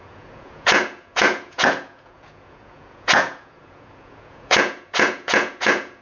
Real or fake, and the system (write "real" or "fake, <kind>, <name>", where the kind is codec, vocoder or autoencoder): fake, vocoder, Vocos